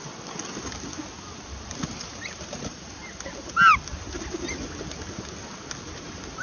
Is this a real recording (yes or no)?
yes